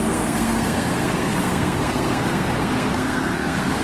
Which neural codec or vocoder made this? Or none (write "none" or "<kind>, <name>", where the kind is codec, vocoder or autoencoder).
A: codec, SNAC